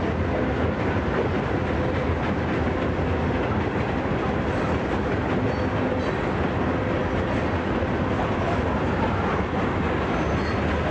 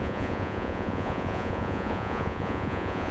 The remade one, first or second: second